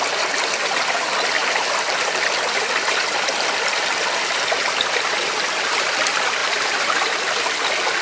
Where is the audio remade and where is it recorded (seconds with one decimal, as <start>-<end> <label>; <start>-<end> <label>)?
0.0-1.4 recorded; 1.4-4.7 remade; 4.7-6.4 recorded; 6.4-7.1 remade; 7.1-8.0 recorded